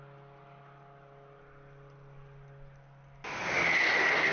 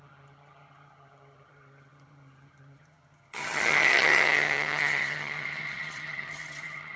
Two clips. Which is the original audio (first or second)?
first